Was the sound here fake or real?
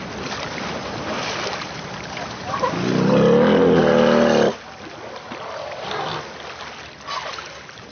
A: real